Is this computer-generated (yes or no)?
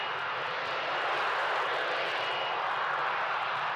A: no